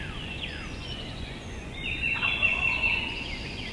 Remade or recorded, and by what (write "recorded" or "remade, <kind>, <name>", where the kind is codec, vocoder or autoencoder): remade, vocoder, Vocos